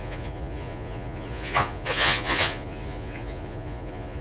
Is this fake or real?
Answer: fake